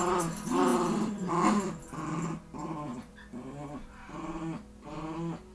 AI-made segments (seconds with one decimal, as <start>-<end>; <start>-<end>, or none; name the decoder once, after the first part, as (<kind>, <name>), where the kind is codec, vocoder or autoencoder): 0.7-1.3 (vocoder, BigVGAN v2); 2.9-4.2